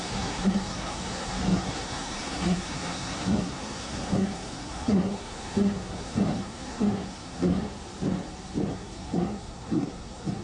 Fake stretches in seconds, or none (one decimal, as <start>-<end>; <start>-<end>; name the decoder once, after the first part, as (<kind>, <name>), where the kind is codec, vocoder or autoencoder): 0.0-7.7 (codec, SNAC); 8.7-10.4